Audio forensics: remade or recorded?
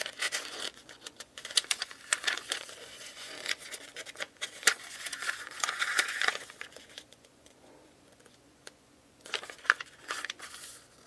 remade